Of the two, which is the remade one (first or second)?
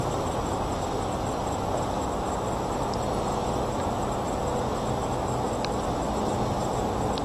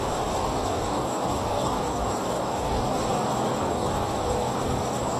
second